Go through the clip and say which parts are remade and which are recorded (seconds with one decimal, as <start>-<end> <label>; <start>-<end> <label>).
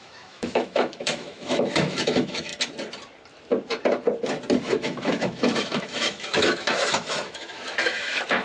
0.0-2.5 remade; 2.5-4.6 recorded; 4.6-8.4 remade